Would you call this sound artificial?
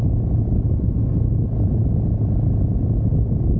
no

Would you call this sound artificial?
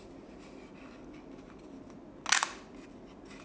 no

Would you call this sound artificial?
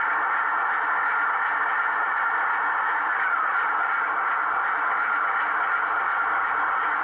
no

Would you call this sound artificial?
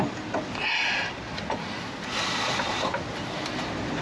no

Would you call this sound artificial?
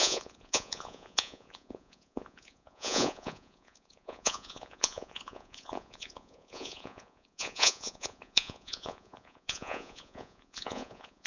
yes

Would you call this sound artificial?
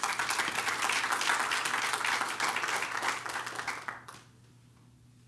no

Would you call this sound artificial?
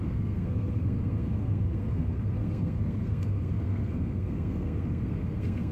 yes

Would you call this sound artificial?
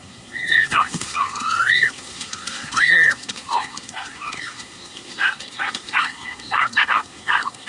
yes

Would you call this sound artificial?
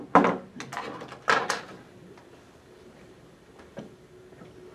no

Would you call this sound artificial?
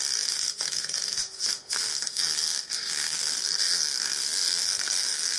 yes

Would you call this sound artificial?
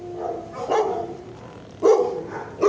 no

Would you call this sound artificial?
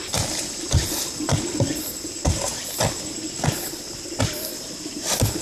no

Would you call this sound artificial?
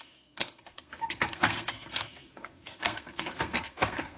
yes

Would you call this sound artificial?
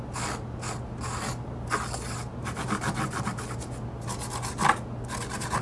no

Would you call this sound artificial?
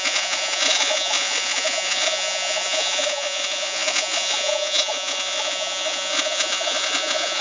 yes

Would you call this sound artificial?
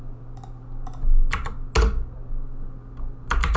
no